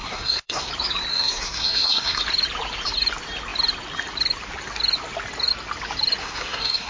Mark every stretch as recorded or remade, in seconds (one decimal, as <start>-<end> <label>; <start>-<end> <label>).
0.0-0.7 remade; 0.7-1.1 recorded; 1.1-2.2 remade; 2.2-6.2 recorded; 6.2-6.9 remade